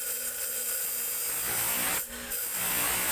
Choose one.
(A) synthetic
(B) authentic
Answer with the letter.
B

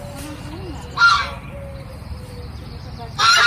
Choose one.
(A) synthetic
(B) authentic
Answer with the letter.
B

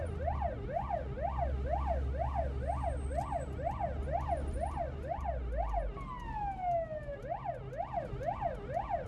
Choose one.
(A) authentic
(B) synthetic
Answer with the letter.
A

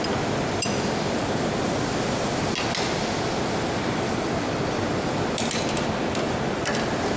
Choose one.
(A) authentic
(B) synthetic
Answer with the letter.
A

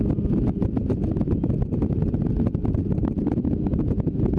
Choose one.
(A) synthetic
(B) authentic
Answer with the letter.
B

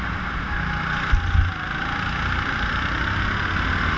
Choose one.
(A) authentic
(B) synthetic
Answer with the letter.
A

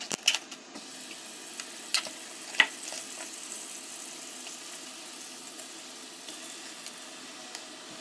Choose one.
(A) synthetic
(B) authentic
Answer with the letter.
B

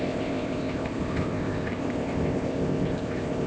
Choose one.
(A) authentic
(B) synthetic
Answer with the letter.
B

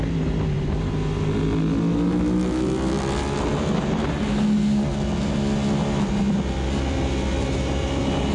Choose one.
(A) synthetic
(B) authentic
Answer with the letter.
B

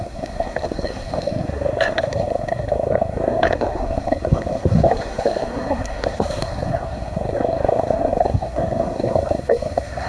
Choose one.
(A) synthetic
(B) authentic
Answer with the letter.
A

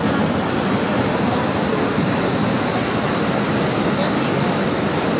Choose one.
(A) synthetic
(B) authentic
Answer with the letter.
A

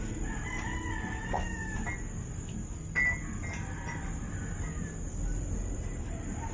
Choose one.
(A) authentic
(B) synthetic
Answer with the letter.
A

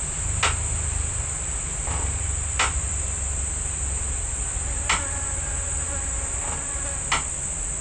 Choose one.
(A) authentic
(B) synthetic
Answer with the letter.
A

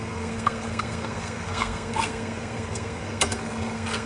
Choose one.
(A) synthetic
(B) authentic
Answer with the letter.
A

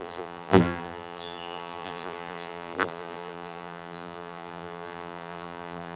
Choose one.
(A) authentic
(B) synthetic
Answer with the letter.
B